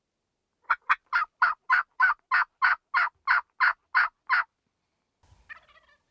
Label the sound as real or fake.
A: real